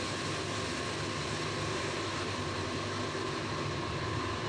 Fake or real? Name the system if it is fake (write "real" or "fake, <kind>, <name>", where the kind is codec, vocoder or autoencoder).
real